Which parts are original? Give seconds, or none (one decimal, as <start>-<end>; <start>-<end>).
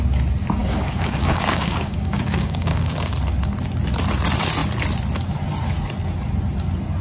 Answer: 0.0-0.6; 3.1-7.0